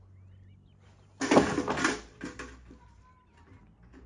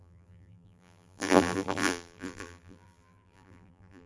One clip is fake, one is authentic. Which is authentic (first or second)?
first